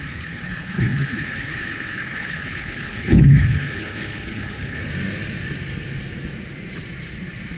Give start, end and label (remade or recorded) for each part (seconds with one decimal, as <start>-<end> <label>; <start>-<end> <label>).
0.0-4.9 remade; 4.9-7.6 recorded